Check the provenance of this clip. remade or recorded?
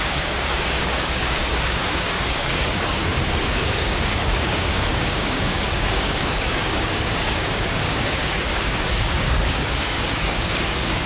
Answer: remade